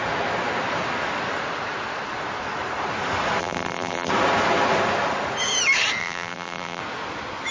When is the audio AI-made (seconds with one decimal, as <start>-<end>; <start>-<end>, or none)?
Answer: 3.4-4.1; 6.0-6.8